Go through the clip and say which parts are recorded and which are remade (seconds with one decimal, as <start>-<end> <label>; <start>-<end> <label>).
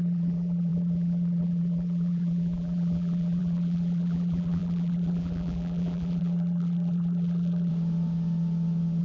0.0-7.7 remade; 7.7-9.0 recorded